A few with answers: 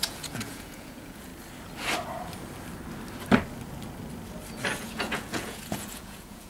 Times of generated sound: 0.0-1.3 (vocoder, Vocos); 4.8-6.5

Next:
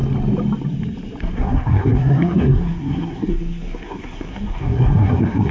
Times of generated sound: 1.2-5.5 (codec, SNAC)